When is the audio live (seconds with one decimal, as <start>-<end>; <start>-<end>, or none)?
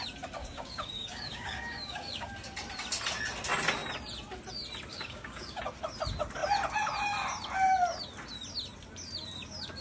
0.0-0.4; 2.3-4.9; 5.6-9.8